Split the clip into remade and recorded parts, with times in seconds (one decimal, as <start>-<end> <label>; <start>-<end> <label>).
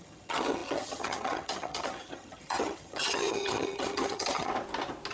0.0-4.5 remade; 4.5-5.1 recorded